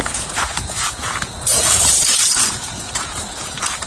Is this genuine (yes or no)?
no